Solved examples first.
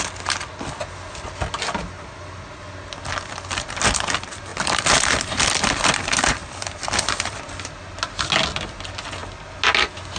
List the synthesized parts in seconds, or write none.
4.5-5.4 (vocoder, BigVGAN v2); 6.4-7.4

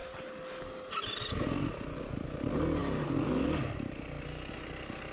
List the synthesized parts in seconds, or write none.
none

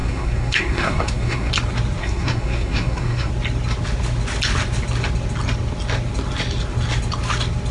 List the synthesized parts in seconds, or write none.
0.0-1.5 (codec, SNAC); 2.0-3.3

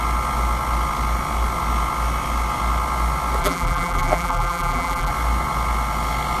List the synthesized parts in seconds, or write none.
3.4-5.1 (vocoder, BigVGAN v2)